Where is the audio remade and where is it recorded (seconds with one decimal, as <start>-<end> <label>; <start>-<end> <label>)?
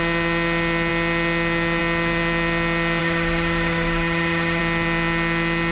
0.0-3.0 recorded; 3.0-4.6 remade; 4.6-5.7 recorded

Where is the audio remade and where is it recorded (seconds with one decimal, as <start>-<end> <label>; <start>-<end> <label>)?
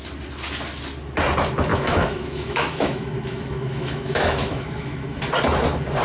0.0-1.7 recorded; 1.7-5.2 remade; 5.2-6.0 recorded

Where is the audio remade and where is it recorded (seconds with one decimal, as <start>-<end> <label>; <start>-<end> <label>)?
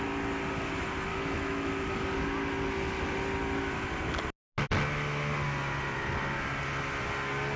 0.0-1.1 recorded; 1.1-1.7 remade; 1.7-7.6 recorded